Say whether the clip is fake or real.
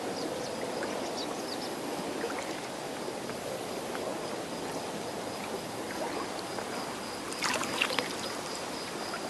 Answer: real